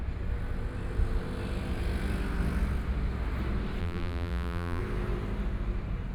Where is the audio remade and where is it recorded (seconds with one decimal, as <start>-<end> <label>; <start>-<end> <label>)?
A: 0.0-3.8 recorded; 3.8-4.8 remade; 4.8-6.1 recorded

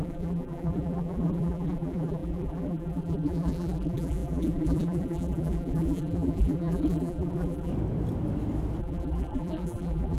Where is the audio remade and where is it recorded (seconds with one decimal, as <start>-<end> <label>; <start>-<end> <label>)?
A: 0.0-7.7 remade; 7.7-8.8 recorded; 8.8-10.2 remade

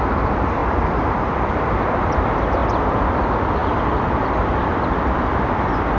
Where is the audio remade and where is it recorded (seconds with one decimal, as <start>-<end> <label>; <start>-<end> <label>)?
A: 0.0-2.6 remade; 2.6-3.1 recorded; 3.1-6.0 remade

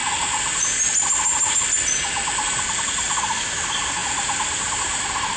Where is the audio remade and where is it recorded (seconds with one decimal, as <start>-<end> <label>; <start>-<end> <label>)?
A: 0.0-5.4 recorded

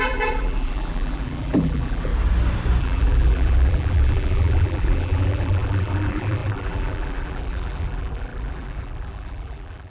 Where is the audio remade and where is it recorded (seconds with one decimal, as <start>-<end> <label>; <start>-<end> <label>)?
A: 0.0-2.1 remade; 2.1-2.8 recorded; 2.8-9.9 remade

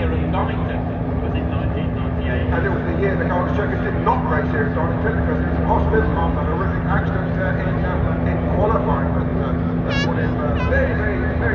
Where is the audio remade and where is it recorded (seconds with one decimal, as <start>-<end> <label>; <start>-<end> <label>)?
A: 0.0-2.4 recorded; 2.4-3.3 remade; 3.3-11.5 recorded